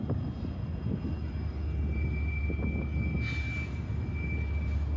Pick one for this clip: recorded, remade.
recorded